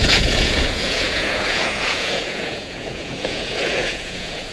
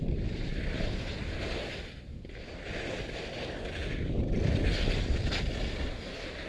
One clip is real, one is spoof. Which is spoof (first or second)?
first